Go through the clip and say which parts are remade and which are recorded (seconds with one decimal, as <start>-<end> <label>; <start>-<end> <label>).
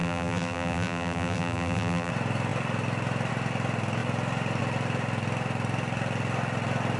0.0-2.1 remade; 2.1-7.0 recorded